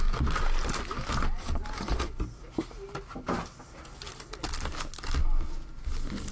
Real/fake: real